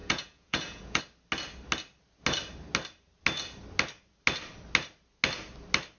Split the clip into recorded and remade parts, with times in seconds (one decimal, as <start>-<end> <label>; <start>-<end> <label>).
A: 0.0-1.0 remade; 1.0-6.0 recorded